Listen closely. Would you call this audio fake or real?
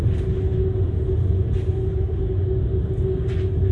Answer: real